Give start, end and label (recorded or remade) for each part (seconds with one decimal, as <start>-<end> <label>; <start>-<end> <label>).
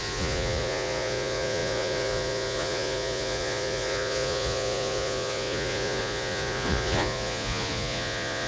0.0-8.5 remade